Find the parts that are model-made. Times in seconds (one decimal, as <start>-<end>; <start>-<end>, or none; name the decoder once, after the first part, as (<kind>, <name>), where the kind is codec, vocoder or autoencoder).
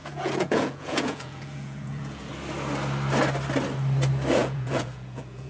0.0-2.3 (vocoder, Vocos); 4.4-5.5